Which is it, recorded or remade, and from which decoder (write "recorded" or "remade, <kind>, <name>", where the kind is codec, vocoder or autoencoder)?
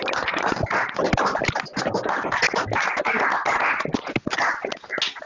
recorded